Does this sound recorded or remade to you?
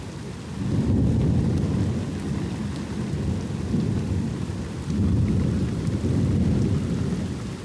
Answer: recorded